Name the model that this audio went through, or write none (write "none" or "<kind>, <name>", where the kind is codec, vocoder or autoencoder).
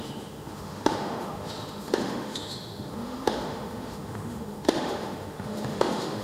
autoencoder, DAC-VAE